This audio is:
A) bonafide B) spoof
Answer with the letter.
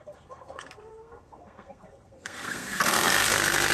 B